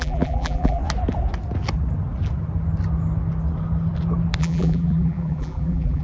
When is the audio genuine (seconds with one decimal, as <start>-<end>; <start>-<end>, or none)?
0.8-4.4